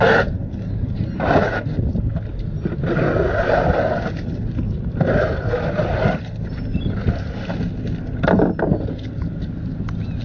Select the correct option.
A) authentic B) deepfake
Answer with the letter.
A